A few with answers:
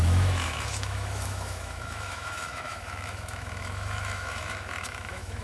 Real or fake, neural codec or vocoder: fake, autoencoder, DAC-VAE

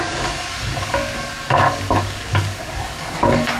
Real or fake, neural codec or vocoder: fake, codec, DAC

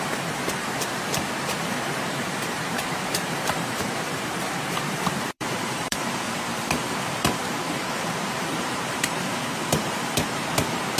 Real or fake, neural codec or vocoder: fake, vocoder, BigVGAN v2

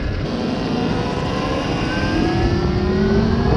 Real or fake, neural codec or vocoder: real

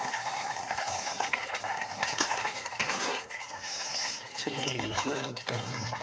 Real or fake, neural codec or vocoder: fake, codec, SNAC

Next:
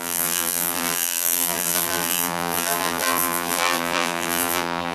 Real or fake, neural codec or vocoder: fake, vocoder, BigVGAN v2